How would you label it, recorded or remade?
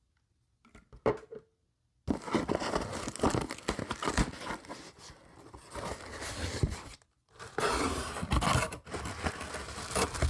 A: recorded